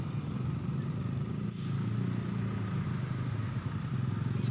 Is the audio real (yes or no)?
yes